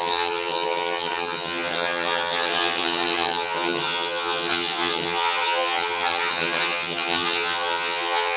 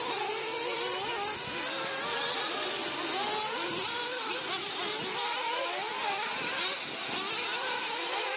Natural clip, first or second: second